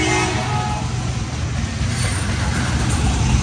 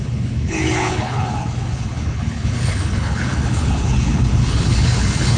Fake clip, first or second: second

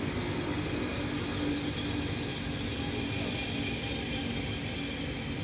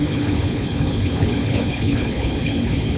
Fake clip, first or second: second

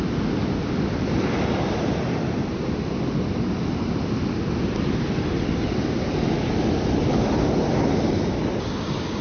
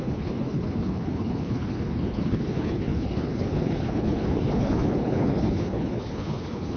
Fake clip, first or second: second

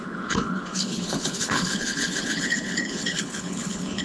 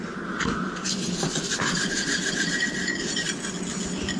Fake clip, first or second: first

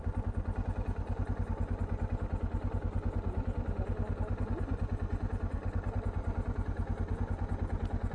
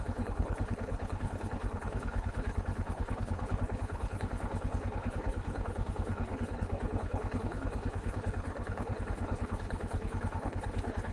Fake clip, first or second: second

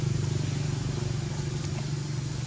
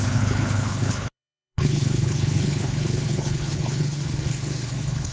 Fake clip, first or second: second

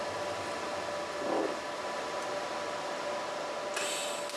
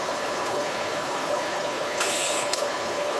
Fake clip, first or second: second